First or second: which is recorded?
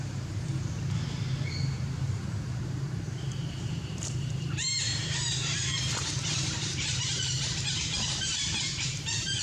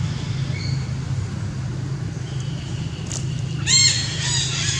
second